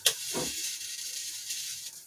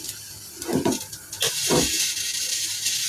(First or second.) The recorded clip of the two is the second